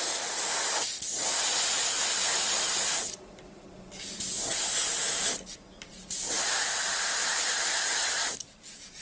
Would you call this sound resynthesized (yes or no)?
no